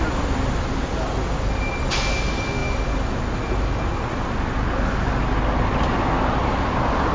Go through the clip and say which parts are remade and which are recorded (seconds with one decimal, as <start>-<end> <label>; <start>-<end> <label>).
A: 0.0-7.1 recorded